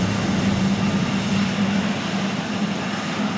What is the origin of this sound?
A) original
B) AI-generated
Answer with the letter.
A